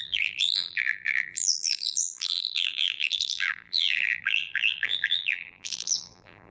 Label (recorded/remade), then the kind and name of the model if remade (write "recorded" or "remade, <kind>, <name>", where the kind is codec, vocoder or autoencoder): remade, vocoder, BigVGAN v2